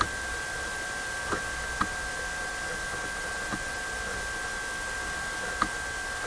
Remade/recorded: recorded